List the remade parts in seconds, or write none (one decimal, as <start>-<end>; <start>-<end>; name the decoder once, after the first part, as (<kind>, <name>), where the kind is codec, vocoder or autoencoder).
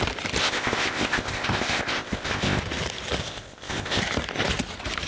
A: 0.4-2.6 (codec, ZipCodec); 3.2-4.0